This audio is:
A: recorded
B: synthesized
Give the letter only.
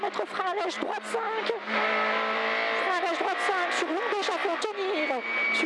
A